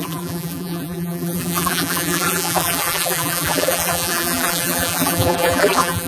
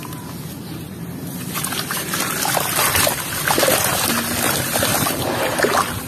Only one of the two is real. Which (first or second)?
second